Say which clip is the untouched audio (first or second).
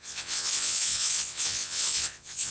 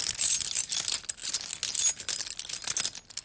second